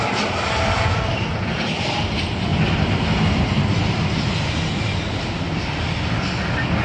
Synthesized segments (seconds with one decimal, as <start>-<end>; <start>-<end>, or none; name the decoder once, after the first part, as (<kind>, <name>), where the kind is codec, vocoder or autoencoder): none